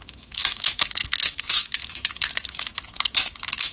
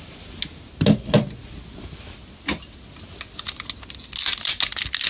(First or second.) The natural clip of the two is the second